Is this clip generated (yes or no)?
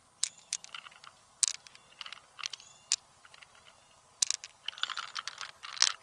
no